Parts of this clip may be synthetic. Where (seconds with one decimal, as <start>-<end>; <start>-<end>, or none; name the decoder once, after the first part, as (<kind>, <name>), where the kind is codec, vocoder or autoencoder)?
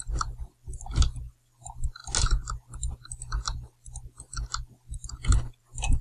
none